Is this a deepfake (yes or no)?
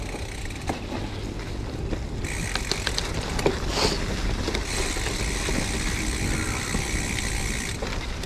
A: no